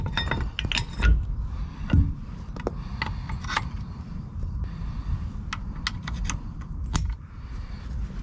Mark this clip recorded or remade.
recorded